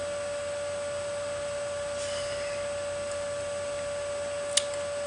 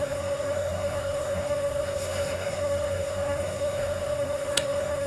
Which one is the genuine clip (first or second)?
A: first